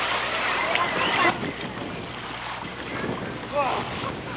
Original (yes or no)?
yes